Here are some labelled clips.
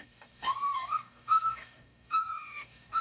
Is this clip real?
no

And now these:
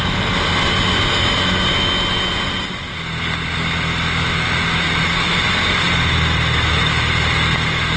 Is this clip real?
yes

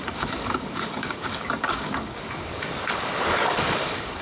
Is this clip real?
no